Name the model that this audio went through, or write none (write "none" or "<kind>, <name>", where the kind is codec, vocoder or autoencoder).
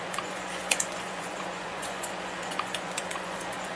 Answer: vocoder, Vocos